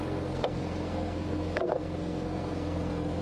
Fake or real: fake